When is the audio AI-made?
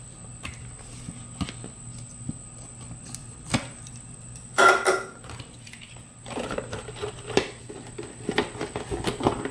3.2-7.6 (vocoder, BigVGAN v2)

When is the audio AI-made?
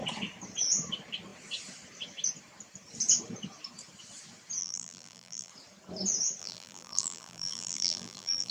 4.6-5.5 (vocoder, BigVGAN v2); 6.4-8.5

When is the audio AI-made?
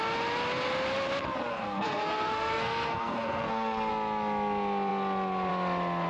1.5-3.9 (codec, SNAC)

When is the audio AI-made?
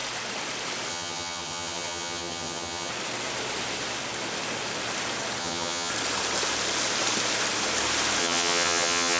0.9-2.9 (vocoder, HiFi-GAN); 5.4-5.9; 8.2-9.2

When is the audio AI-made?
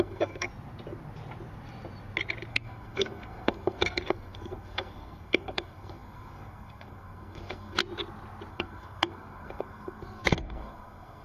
0.0-0.5 (codec, SNAC); 2.5-7.8; 8.5-11.2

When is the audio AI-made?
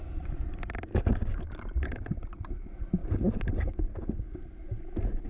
0.9-1.5 (codec, DAC); 3.0-4.4